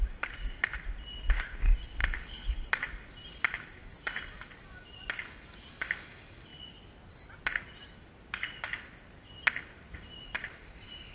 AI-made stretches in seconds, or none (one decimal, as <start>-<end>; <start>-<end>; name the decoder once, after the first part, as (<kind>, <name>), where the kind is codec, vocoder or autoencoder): 2.0-2.7 (codec, HILCodec)